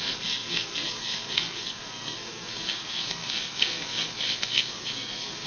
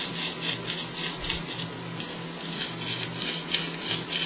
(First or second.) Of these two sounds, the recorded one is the second